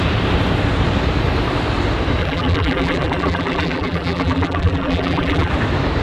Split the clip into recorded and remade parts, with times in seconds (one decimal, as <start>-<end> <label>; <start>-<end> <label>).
0.0-2.2 recorded; 2.2-5.5 remade; 5.5-6.0 recorded